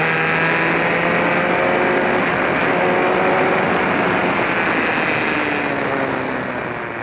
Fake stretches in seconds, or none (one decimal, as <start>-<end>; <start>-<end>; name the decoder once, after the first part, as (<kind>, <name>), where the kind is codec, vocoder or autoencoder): none